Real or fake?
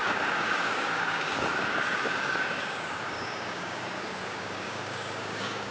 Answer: fake